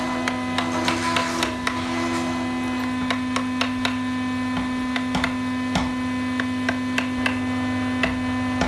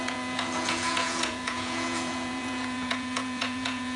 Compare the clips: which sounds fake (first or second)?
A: second